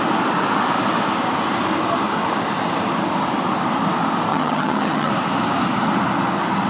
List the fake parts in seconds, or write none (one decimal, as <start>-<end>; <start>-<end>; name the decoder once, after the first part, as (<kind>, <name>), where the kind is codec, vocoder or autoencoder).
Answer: 4.3-5.1 (vocoder, HiFi-GAN)